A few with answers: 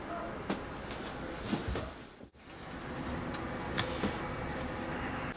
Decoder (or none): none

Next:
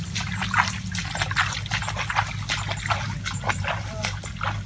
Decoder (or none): none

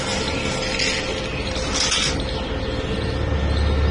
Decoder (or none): none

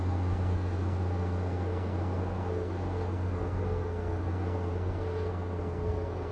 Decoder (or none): codec, SNAC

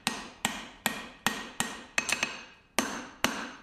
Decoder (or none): none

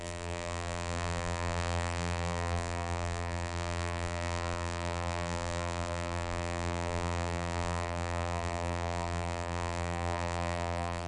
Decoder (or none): vocoder, BigVGAN v2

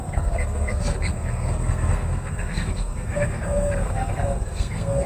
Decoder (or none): codec, SNAC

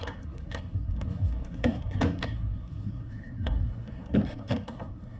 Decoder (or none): codec, SNAC